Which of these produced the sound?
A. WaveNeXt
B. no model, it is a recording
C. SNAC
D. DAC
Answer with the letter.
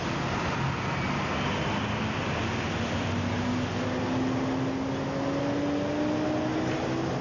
B